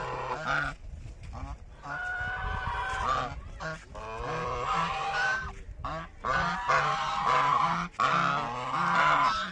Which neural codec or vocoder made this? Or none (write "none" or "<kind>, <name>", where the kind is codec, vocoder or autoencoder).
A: none